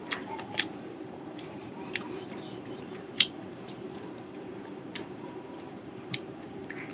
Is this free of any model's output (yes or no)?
no